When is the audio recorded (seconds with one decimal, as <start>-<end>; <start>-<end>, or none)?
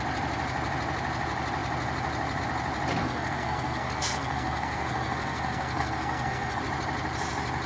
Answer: 0.0-3.0; 6.6-7.7